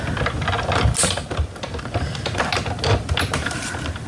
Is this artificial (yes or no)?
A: no